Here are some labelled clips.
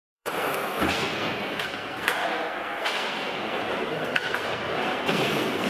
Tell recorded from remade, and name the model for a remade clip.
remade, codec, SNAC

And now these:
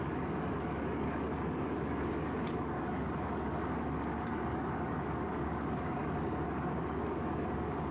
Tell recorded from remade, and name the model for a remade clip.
remade, codec, DAC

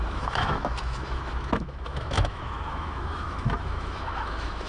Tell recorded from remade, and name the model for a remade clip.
remade, autoencoder, DAC-VAE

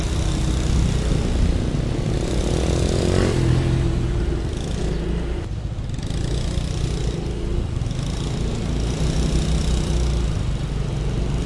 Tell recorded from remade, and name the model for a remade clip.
recorded